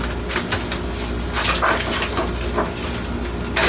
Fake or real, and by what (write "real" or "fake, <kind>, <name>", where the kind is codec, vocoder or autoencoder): real